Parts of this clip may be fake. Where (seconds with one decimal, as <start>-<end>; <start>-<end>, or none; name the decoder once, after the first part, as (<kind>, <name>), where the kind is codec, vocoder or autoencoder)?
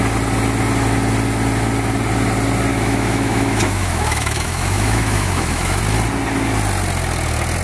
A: 2.7-5.8 (autoencoder, DAC-VAE)